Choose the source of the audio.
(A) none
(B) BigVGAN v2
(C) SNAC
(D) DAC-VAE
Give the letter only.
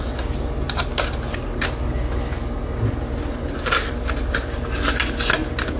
A